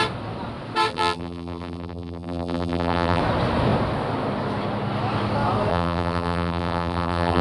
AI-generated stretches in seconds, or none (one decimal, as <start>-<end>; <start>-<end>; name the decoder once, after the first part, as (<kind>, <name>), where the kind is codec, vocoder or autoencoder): 0.9-3.2 (vocoder, BigVGAN v2); 5.7-7.4